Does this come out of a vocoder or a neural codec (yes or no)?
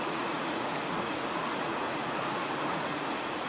yes